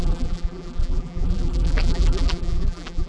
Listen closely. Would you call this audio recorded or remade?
remade